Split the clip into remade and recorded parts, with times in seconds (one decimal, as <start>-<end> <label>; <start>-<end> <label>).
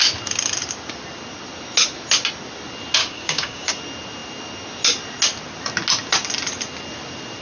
0.0-3.0 recorded; 3.0-3.7 remade; 3.7-7.4 recorded